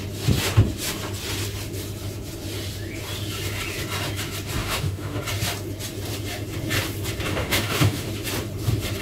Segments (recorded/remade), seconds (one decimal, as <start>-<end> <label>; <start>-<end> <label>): 0.0-4.6 recorded; 4.6-5.2 remade; 5.2-7.3 recorded; 7.3-8.1 remade; 8.1-9.0 recorded